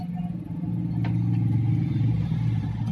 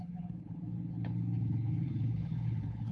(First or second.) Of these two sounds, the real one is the first